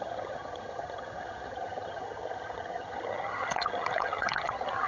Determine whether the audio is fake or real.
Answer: fake